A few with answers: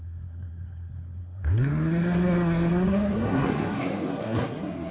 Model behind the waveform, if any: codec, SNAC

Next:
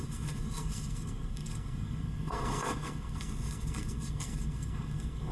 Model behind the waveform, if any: codec, SNAC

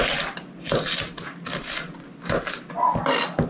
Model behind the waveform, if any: none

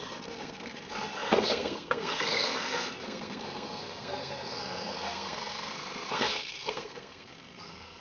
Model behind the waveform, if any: codec, SNAC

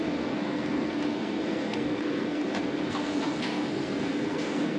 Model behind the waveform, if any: codec, SNAC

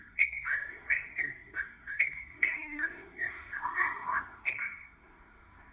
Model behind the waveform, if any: codec, SNAC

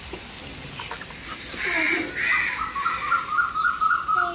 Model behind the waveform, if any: none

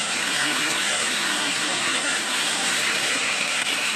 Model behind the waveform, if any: codec, SNAC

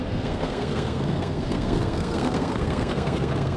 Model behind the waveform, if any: codec, SNAC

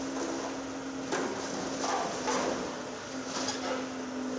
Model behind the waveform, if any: none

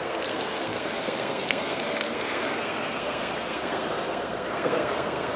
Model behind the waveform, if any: codec, SNAC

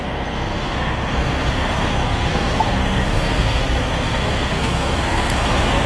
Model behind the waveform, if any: codec, SNAC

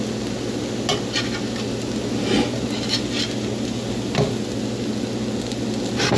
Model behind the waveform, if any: none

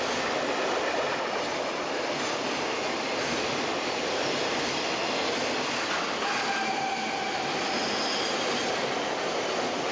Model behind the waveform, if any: none